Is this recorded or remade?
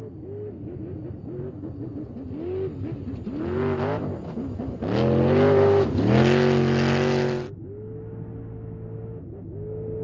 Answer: recorded